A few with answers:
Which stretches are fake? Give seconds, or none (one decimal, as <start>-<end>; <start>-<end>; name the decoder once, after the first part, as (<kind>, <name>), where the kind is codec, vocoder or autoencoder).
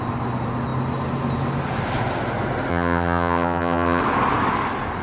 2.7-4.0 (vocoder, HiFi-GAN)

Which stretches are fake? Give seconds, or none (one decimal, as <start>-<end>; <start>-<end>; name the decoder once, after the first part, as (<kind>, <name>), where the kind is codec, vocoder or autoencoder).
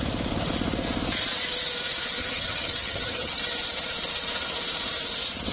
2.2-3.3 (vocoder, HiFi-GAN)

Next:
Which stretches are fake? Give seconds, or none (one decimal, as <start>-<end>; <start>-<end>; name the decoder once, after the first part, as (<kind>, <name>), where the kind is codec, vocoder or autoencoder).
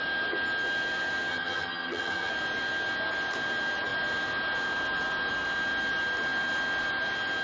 1.3-2.3 (vocoder, HiFi-GAN)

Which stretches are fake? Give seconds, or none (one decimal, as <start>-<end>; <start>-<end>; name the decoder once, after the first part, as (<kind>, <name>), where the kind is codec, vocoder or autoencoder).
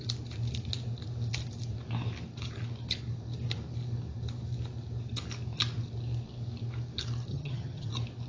7.3-7.9 (vocoder, HiFi-GAN)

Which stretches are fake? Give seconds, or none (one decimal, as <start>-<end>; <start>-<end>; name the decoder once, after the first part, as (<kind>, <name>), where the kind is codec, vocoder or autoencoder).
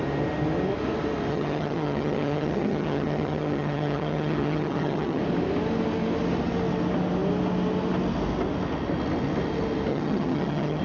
1.3-5.2 (vocoder, HiFi-GAN); 9.9-10.8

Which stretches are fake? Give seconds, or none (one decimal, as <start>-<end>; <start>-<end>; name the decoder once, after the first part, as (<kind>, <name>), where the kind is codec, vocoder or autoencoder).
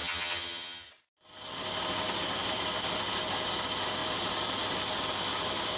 0.0-0.9 (vocoder, HiFi-GAN)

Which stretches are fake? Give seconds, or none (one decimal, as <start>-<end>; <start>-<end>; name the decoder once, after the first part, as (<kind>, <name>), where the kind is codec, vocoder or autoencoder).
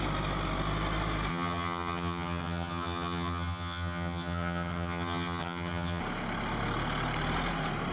1.3-6.0 (vocoder, HiFi-GAN)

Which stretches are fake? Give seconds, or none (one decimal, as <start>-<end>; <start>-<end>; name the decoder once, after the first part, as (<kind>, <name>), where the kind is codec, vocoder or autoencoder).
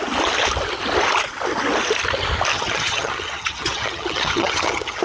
2.5-5.0 (vocoder, HiFi-GAN)